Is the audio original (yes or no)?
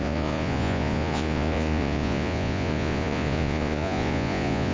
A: no